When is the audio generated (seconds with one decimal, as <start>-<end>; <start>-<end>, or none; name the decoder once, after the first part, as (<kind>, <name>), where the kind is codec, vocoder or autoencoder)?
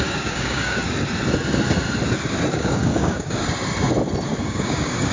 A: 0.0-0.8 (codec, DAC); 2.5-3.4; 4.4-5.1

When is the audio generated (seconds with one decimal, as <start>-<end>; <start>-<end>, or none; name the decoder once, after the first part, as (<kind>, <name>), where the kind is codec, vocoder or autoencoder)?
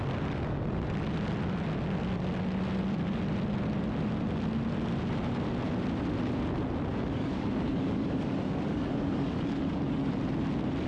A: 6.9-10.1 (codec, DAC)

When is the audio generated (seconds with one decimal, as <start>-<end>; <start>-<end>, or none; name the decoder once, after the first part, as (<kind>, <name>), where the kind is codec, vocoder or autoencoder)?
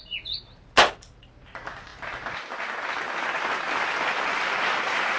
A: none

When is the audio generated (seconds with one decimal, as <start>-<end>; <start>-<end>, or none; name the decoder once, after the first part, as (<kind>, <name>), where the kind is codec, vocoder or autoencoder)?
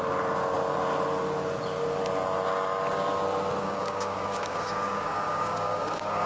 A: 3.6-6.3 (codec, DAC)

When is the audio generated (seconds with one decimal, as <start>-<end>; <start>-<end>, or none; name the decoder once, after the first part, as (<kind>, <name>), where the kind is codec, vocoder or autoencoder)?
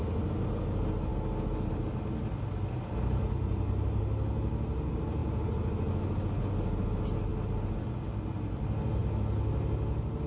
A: none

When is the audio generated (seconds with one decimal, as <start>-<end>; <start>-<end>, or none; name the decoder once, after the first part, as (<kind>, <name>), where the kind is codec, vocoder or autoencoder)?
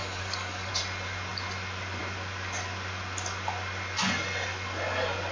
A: 0.0-0.7 (codec, DAC)